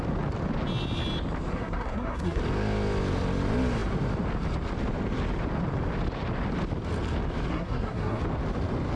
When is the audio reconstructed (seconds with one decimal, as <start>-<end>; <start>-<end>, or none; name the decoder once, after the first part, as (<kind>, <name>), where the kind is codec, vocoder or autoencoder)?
1.5-2.4 (codec, SNAC); 7.5-8.2